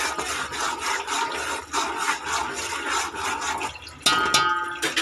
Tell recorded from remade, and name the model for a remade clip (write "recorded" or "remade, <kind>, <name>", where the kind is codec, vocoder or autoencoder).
recorded